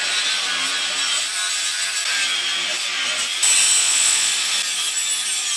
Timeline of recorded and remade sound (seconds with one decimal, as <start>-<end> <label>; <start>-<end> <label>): 0.0-3.8 recorded; 3.8-4.3 remade; 4.3-5.6 recorded